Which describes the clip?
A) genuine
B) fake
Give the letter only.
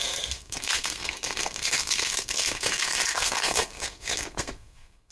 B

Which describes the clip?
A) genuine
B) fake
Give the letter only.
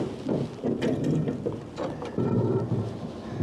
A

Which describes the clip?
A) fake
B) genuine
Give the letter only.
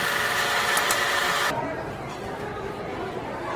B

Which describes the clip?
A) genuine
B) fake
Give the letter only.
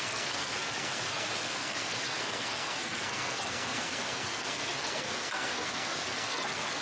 B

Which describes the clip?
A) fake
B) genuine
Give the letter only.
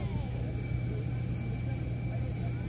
B